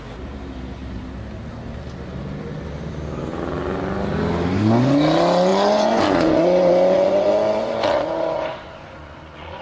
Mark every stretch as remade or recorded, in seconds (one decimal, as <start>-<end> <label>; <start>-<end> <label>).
0.0-5.5 recorded; 5.5-9.6 remade